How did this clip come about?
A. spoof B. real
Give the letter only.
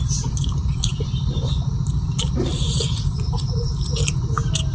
A